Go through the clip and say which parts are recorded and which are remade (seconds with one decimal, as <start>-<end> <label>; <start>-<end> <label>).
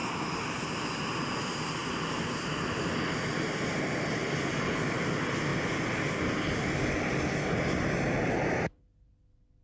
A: 0.0-9.6 recorded